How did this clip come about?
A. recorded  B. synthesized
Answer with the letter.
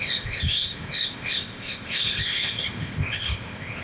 B